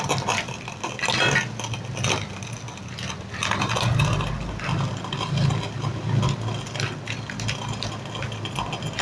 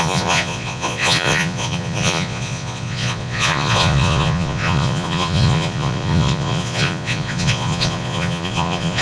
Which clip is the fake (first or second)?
second